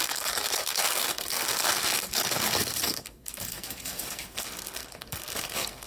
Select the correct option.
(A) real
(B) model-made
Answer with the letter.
B